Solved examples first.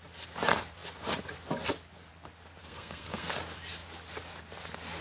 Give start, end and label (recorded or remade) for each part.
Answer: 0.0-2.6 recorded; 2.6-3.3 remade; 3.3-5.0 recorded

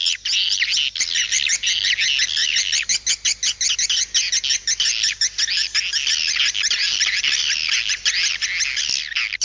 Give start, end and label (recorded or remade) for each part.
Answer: 0.0-9.4 recorded